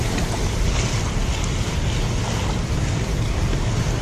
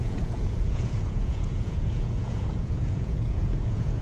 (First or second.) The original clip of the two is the first